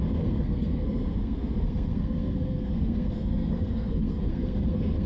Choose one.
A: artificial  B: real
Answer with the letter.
A